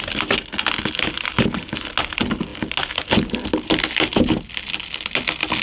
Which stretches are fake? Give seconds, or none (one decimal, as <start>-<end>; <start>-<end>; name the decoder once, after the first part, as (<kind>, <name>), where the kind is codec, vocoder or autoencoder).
none